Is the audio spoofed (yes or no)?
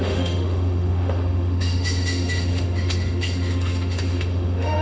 yes